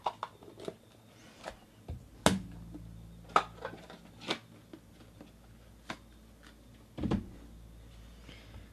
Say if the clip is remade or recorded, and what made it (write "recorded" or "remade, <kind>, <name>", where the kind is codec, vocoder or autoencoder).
recorded